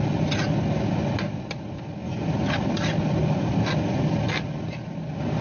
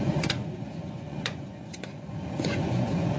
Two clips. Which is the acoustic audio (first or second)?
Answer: first